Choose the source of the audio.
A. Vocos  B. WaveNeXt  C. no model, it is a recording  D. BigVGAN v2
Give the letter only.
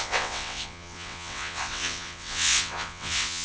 B